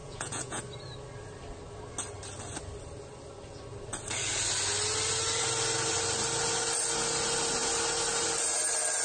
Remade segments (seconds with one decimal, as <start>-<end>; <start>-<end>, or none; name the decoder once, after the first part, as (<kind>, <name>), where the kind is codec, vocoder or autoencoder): 0.0-0.6 (vocoder, Vocos)